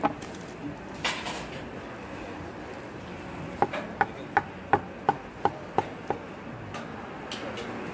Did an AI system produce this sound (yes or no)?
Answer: no